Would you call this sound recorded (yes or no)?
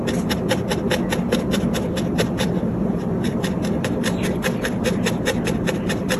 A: yes